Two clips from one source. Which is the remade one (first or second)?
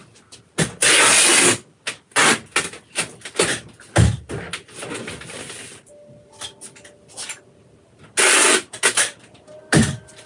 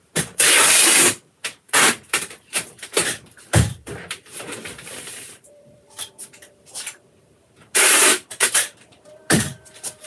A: second